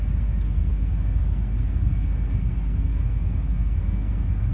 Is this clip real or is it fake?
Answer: fake